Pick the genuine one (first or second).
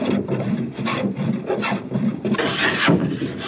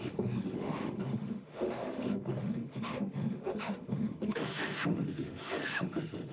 first